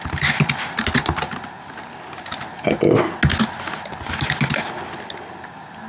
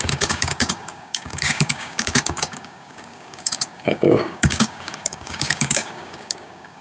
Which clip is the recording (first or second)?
first